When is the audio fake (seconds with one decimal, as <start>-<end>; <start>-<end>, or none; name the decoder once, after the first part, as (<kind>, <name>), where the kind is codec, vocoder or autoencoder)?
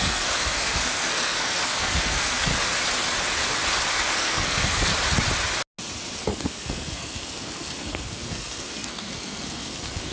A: 0.0-2.5 (codec, SNAC); 3.9-4.9; 6.2-10.1